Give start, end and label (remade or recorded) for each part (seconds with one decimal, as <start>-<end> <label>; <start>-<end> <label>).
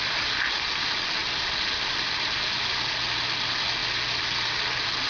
0.0-5.1 recorded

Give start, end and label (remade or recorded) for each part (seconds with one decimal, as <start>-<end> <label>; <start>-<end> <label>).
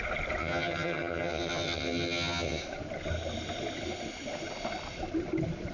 0.0-0.4 recorded; 0.4-2.6 remade; 2.6-5.7 recorded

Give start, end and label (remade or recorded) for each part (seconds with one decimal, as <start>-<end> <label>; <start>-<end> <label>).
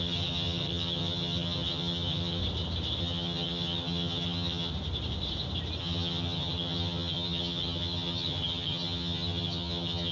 0.0-2.4 remade; 2.4-3.0 recorded; 3.0-4.7 remade; 4.7-5.8 recorded; 5.8-10.1 remade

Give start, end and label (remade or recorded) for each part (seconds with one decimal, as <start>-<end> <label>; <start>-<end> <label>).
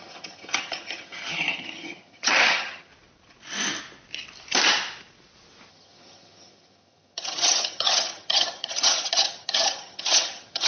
0.0-2.9 remade; 2.9-5.7 recorded; 5.7-10.7 remade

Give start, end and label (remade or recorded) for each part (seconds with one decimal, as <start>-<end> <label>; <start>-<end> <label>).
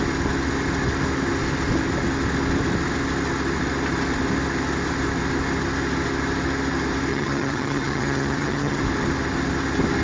0.0-7.1 recorded; 7.1-8.8 remade; 8.8-10.0 recorded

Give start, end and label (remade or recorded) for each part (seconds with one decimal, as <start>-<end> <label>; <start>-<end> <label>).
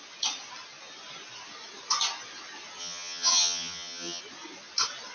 0.0-2.8 recorded; 2.8-4.2 remade; 4.2-5.1 recorded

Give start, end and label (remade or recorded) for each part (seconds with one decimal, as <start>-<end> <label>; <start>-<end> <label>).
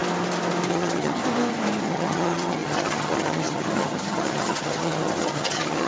0.0-0.7 recorded; 0.7-1.2 remade; 1.2-1.8 recorded; 1.8-5.9 remade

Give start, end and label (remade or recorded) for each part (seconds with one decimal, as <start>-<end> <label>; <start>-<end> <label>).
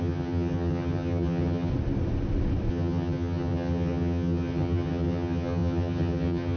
0.0-1.7 remade; 1.7-2.7 recorded; 2.7-6.6 remade